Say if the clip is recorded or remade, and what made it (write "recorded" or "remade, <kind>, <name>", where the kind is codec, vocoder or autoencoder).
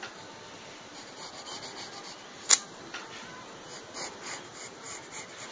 recorded